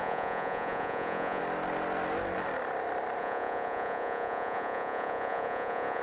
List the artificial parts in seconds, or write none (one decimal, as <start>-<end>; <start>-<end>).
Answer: 0.0-1.4; 3.2-6.0